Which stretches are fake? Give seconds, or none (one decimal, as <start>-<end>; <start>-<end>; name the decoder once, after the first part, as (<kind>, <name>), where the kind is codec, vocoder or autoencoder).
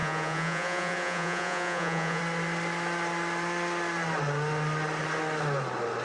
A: 0.0-2.2 (vocoder, Vocos)